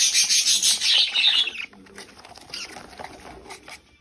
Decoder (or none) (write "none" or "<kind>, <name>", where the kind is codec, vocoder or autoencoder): none